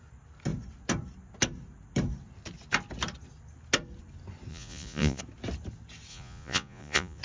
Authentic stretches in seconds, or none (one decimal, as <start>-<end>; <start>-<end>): 0.0-4.5; 5.2-6.1